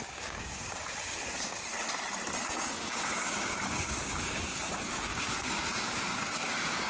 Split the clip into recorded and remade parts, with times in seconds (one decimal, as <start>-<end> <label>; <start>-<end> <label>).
0.0-1.7 remade; 1.7-2.4 recorded; 2.4-6.9 remade